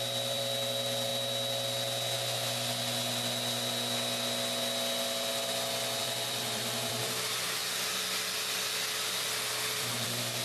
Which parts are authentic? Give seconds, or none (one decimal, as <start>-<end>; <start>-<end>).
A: 1.1-6.0; 7.6-9.8

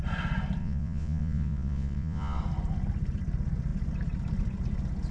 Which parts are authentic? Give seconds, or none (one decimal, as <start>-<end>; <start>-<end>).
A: 0.0-0.6; 2.4-5.1

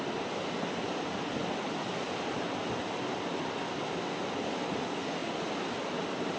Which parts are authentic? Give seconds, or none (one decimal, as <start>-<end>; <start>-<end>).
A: 0.0-6.4

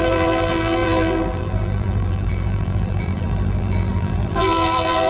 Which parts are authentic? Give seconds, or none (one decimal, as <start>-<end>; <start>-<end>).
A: none